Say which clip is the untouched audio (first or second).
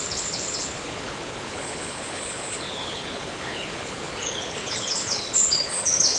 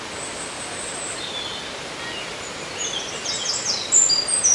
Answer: second